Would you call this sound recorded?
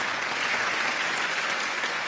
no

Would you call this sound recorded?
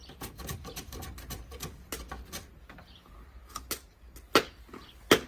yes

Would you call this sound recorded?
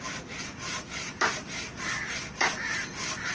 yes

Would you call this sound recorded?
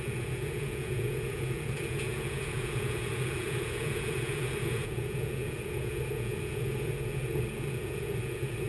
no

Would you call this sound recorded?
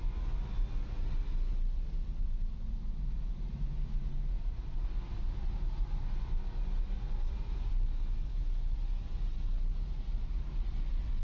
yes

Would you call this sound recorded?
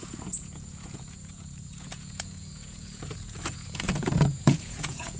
no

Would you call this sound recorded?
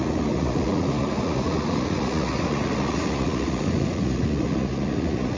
no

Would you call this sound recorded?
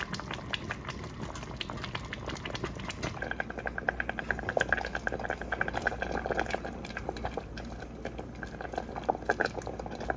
yes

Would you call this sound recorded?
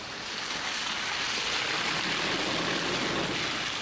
yes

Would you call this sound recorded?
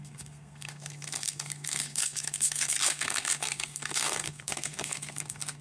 no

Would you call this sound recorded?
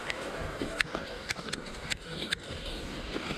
no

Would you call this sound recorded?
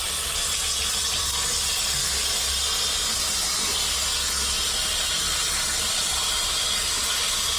yes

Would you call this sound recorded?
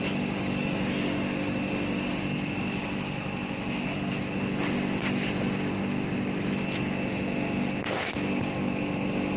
yes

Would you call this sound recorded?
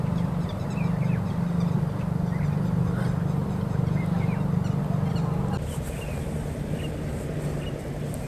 yes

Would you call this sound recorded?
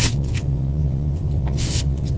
no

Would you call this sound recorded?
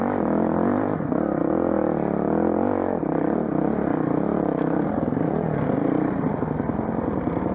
yes